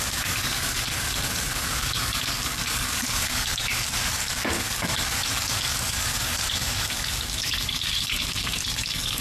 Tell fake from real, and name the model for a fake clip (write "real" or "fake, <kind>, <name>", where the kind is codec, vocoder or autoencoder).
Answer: fake, codec, DAC